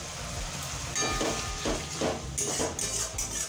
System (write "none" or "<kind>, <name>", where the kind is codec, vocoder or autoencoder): none